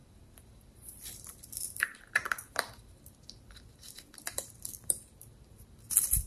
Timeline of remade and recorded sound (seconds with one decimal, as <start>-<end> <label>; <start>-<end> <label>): 0.0-6.3 remade